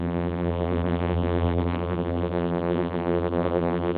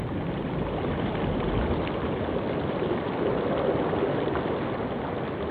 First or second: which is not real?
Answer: first